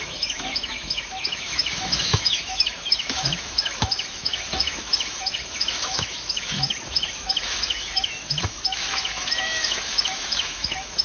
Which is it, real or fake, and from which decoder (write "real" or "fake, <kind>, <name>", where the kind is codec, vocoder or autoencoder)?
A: fake, autoencoder, DAC-VAE